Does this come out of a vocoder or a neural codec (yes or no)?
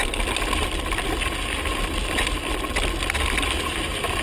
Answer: no